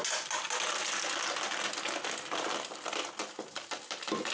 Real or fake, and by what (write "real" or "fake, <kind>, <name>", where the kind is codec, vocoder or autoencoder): real